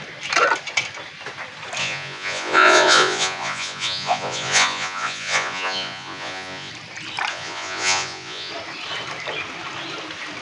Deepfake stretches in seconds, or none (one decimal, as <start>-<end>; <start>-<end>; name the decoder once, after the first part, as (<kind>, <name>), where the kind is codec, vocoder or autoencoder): 1.8-6.7 (vocoder, Vocos); 7.3-8.5